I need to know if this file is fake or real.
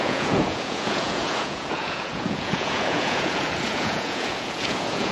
fake